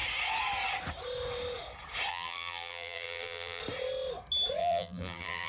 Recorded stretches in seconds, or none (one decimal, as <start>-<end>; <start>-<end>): 0.0-2.1; 3.6-4.6

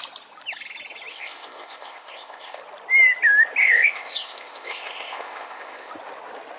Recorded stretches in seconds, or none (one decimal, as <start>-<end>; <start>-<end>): 0.0-1.1; 2.6-3.6; 5.9-6.6

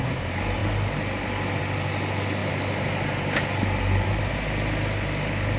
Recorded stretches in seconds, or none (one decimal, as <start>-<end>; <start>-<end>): 0.0-5.6